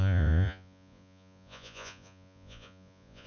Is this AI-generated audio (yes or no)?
yes